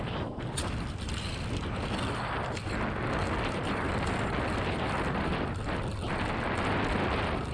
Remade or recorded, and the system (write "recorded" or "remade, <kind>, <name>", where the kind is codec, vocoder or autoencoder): recorded